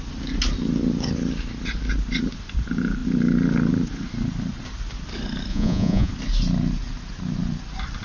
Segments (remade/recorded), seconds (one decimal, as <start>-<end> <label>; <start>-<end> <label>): 0.0-5.5 recorded; 5.5-6.1 remade; 6.1-8.0 recorded